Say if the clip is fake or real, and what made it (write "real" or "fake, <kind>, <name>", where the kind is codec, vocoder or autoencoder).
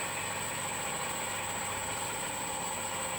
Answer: real